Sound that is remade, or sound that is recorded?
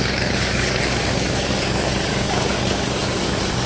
remade